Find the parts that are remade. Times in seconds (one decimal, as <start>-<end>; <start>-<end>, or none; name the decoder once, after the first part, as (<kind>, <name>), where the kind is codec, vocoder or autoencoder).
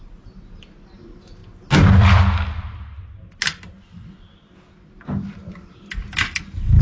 none